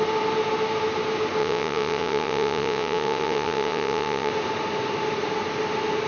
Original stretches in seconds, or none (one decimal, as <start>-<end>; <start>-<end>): 0.0-1.4; 4.3-6.1